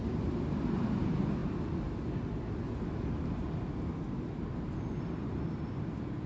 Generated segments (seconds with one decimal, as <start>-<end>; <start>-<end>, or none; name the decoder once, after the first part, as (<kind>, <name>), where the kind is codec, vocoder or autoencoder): none